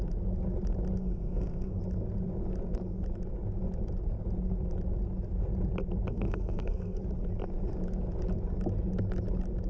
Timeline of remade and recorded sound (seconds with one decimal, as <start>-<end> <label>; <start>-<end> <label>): 0.0-1.0 recorded; 1.0-1.8 remade; 1.8-6.1 recorded; 6.1-7.0 remade; 7.0-9.7 recorded